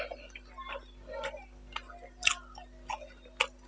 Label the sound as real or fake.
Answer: real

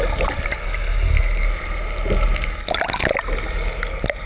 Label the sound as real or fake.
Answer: real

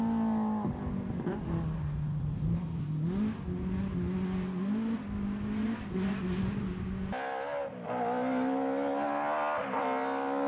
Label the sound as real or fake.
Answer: real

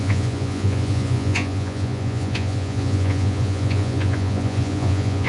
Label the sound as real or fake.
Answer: fake